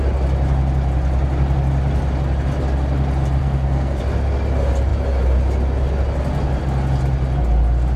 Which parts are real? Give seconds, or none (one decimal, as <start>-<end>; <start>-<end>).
0.0-3.4; 4.0-8.0